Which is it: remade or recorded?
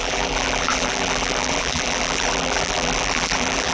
remade